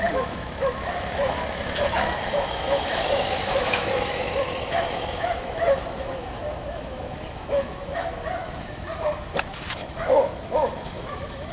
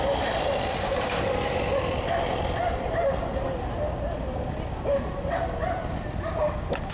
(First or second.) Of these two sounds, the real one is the second